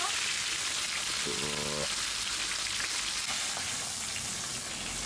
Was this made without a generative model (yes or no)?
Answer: yes